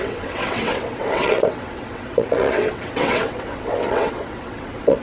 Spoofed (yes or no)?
yes